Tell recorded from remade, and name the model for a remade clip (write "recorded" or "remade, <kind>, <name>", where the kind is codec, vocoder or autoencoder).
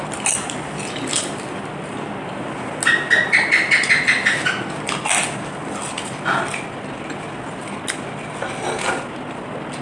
recorded